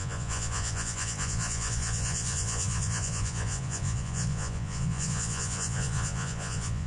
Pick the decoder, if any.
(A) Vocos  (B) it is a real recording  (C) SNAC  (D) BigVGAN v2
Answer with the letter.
A